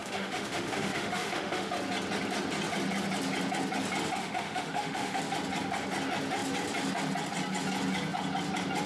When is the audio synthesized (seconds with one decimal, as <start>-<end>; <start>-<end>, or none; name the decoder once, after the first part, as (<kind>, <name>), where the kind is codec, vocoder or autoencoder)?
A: 0.0-1.7 (autoencoder, DAC-VAE); 4.2-5.2